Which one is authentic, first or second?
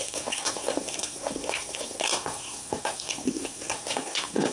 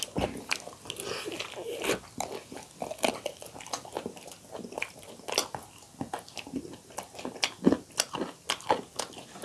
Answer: second